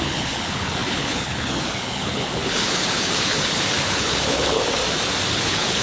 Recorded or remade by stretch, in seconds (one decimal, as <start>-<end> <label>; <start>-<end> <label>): 0.0-4.8 remade; 4.8-5.3 recorded; 5.3-5.8 remade